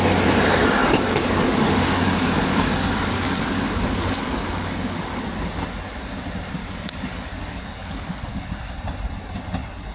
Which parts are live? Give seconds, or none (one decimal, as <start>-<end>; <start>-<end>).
0.0-0.8; 5.2-6.6; 8.4-9.9